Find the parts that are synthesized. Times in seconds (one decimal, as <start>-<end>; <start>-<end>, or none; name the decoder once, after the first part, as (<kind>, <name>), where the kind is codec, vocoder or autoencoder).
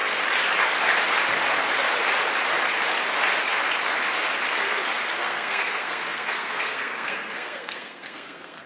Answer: 5.2-8.7 (codec, SNAC)